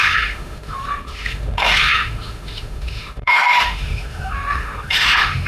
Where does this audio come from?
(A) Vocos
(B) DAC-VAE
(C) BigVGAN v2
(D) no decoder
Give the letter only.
B